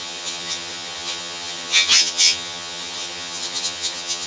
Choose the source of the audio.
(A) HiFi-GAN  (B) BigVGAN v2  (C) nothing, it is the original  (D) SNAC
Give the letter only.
A